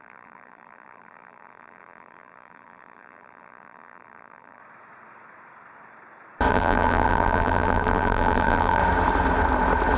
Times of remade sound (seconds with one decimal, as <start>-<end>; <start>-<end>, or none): 0.0-4.6; 6.5-8.8